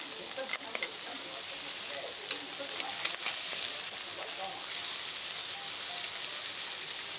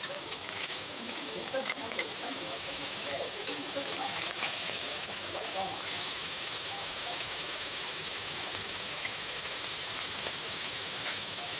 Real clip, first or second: first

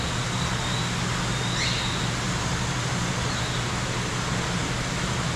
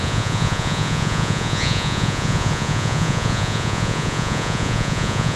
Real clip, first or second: first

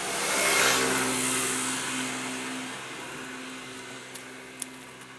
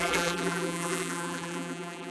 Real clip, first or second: first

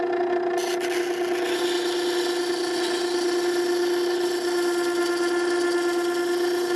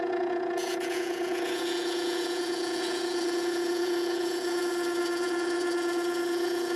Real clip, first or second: first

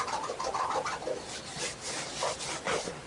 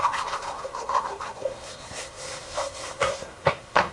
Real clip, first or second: first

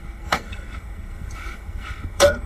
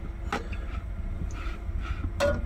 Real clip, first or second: second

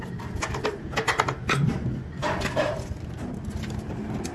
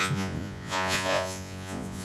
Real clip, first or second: first